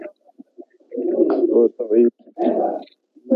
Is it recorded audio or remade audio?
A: recorded